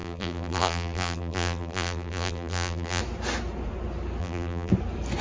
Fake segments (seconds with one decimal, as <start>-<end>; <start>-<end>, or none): 0.0-3.0; 4.2-4.7